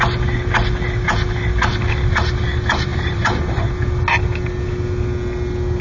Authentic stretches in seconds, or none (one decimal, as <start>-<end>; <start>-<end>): 0.0-2.9; 3.7-5.8